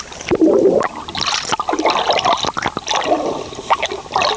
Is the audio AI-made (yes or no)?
no